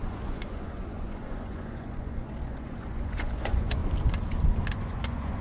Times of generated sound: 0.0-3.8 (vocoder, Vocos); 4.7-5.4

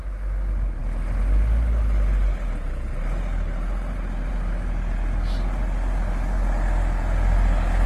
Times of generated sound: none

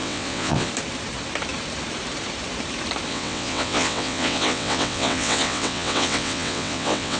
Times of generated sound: 0.0-0.7 (vocoder, WaveNeXt); 3.1-7.2